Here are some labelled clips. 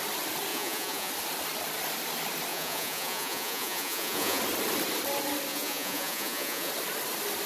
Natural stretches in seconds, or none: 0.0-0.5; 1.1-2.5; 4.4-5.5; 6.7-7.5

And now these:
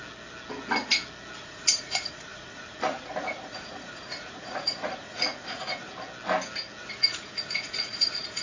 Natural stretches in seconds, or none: 0.0-1.4; 5.9-6.8

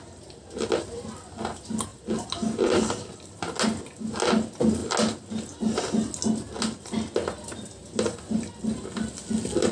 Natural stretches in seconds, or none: 0.0-9.7

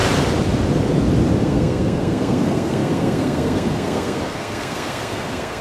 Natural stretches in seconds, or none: 0.0-1.4

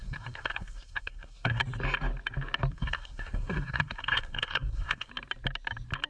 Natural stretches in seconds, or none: 1.6-2.7; 5.1-6.1

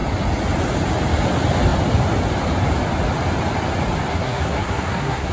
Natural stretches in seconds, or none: 0.0-4.1